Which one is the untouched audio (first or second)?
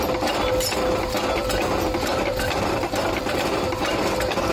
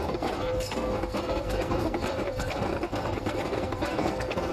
first